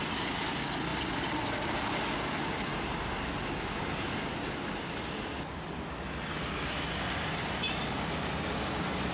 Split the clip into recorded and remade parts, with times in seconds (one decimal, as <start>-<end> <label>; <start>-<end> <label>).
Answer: 0.0-9.1 recorded